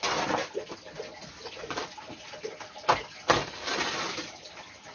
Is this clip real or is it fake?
real